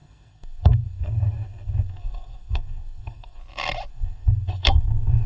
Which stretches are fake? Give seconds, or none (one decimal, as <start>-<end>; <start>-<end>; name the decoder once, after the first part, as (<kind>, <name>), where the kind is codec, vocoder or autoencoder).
0.0-3.4 (codec, SNAC); 3.9-5.3